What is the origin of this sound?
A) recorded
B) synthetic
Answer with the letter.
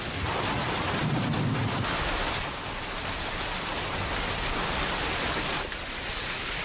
A